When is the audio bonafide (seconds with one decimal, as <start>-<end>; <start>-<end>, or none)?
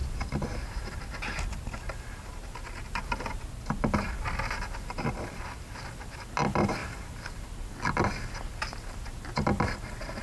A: 0.0-10.2